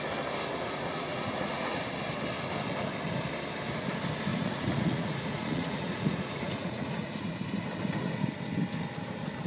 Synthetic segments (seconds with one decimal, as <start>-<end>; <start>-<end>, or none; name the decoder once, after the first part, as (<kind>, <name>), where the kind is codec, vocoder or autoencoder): 0.5-1.8 (vocoder, Vocos); 4.3-7.3